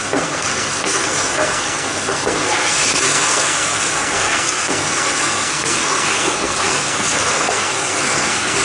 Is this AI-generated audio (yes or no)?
yes